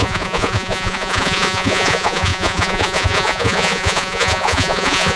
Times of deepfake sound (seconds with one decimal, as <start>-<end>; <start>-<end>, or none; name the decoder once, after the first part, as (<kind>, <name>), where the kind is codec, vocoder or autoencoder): 0.0-5.2 (vocoder, Vocos)